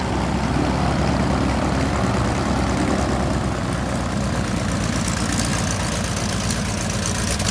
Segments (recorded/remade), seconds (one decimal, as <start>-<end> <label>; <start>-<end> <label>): 0.0-7.5 recorded